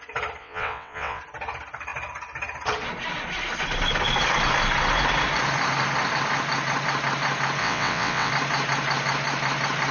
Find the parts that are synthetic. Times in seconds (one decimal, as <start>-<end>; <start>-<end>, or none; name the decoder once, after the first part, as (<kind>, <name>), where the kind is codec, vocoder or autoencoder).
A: 0.4-1.2 (vocoder, WaveNeXt); 7.6-8.3